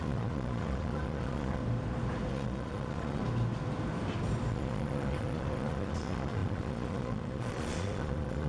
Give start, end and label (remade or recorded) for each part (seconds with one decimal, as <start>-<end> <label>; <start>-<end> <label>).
0.0-1.6 remade; 1.6-2.3 recorded; 2.3-3.2 remade; 3.2-4.5 recorded; 4.5-8.5 remade